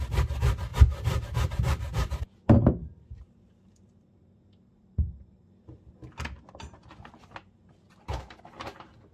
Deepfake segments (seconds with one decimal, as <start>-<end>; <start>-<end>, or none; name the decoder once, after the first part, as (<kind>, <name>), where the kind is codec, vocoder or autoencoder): 0.7-5.6 (vocoder, BigVGAN v2)